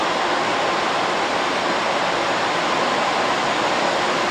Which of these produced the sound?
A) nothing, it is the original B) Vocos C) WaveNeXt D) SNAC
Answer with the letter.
A